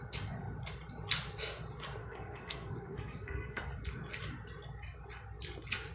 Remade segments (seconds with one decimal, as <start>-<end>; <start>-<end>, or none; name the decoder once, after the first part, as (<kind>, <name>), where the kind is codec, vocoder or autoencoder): 2.0-3.7 (codec, SNAC)